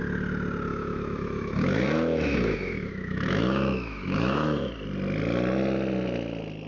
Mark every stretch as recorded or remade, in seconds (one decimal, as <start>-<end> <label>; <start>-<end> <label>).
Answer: 0.0-0.7 recorded; 0.7-4.7 remade; 4.7-6.7 recorded